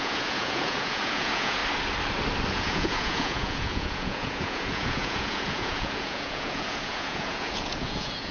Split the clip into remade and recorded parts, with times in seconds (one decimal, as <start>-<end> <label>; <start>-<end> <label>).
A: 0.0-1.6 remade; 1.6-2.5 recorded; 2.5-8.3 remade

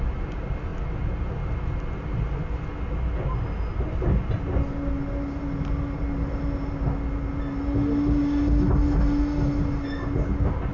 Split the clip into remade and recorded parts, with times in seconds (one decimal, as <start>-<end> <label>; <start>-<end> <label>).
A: 0.0-10.7 recorded

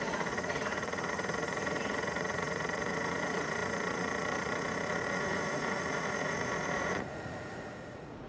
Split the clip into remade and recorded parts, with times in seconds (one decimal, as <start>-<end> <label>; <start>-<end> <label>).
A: 0.0-8.3 remade

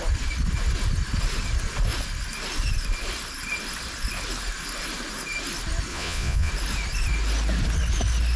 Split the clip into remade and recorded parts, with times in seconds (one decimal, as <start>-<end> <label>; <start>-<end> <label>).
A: 0.0-5.9 recorded; 5.9-6.5 remade; 6.5-8.4 recorded

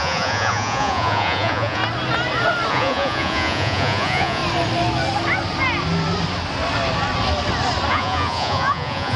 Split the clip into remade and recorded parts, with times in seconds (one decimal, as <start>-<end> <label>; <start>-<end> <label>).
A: 0.0-1.8 remade; 1.8-2.7 recorded; 2.7-4.4 remade; 4.4-7.9 recorded; 7.9-9.2 remade